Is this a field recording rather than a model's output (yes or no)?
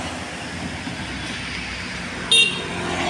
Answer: yes